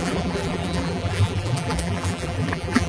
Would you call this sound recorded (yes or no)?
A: no